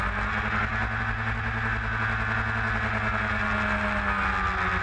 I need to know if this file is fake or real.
real